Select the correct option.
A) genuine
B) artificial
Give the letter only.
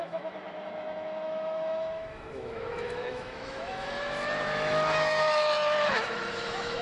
B